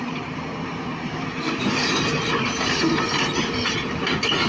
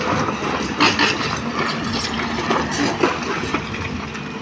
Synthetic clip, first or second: first